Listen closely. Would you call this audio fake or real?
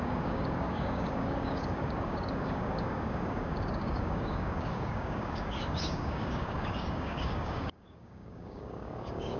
fake